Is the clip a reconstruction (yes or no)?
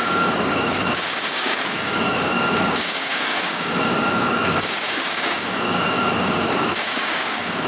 yes